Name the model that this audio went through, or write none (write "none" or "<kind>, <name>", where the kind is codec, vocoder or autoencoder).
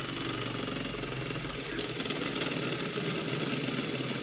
none